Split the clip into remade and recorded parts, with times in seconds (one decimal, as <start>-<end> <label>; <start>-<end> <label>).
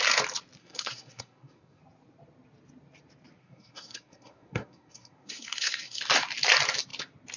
0.0-0.6 recorded; 0.6-1.8 remade; 1.8-3.4 recorded; 3.4-6.0 remade; 6.0-7.4 recorded